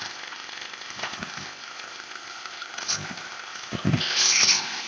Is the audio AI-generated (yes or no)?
yes